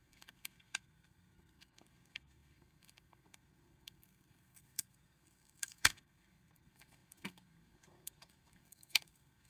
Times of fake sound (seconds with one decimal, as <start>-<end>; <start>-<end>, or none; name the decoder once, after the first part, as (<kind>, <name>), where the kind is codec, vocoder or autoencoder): 0.0-9.5 (codec, SNAC)